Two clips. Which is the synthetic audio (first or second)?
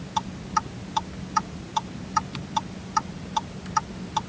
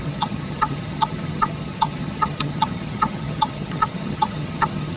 second